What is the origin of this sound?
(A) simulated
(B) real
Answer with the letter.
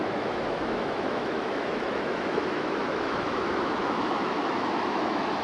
A